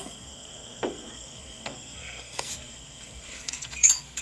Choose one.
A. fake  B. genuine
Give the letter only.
A